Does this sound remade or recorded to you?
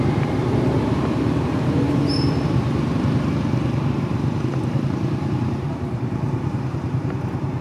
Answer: remade